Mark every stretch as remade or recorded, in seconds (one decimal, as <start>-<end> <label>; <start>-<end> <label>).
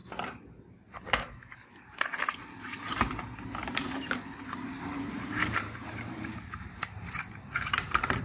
0.0-2.2 recorded; 2.2-8.2 remade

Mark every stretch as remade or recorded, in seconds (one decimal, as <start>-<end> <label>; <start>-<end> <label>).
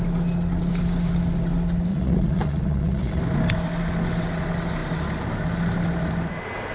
0.0-1.9 recorded; 1.9-3.2 remade; 3.2-6.7 recorded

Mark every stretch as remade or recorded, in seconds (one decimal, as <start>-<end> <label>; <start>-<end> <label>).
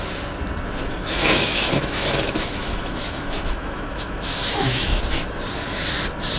0.0-1.2 recorded; 1.2-5.0 remade; 5.0-6.4 recorded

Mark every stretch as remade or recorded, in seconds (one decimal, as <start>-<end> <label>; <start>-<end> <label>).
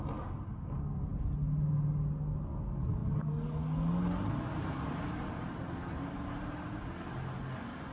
0.0-7.9 recorded